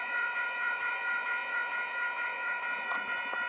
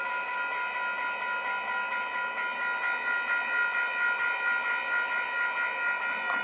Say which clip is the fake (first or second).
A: first